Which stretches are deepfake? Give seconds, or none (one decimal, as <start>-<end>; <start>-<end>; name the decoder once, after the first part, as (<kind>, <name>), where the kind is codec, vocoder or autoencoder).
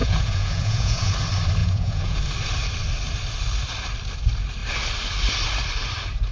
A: 0.0-1.1 (vocoder, Vocos); 1.6-2.2